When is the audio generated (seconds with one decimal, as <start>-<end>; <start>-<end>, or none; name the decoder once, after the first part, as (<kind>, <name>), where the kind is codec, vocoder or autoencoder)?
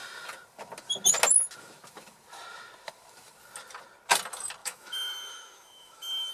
4.6-6.3 (autoencoder, DAC-VAE)